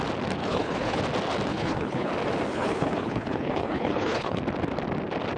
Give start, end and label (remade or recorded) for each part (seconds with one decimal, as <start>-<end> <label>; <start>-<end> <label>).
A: 0.0-0.4 recorded; 0.4-1.0 remade; 1.0-1.5 recorded; 1.5-2.1 remade; 2.1-2.5 recorded; 2.5-4.4 remade; 4.4-5.4 recorded